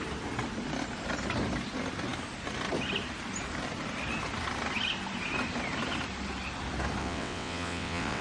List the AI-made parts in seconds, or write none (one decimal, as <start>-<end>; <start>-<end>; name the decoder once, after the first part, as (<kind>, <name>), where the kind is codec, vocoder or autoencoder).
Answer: 7.0-8.2 (vocoder, WaveNeXt)